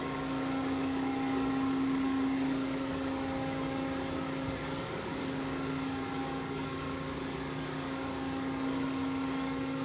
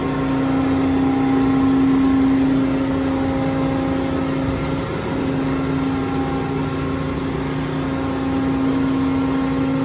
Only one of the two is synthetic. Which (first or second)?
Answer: first